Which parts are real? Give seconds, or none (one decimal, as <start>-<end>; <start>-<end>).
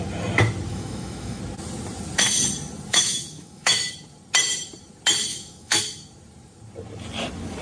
0.0-0.7; 1.4-2.9; 3.9-5.3; 5.8-7.6